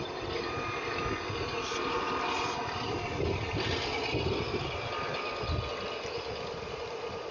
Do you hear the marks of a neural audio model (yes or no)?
no